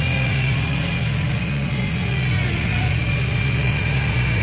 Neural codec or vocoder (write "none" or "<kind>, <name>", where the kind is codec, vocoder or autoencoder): vocoder, Vocos